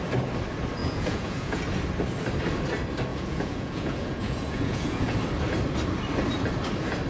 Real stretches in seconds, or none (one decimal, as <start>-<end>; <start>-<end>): 0.0-0.8; 1.6-3.1; 5.2-7.1